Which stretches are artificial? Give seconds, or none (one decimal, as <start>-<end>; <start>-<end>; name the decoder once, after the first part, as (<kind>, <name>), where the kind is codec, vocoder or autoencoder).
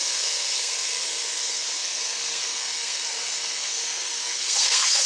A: 0.0-5.1 (codec, SNAC)